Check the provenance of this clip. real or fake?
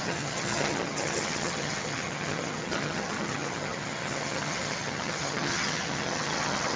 fake